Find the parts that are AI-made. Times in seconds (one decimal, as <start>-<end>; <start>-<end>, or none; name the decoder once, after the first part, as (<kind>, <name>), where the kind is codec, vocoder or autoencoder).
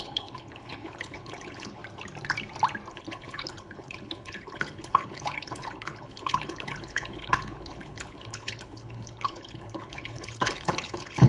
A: 0.0-1.8 (codec, HILCodec); 2.9-11.3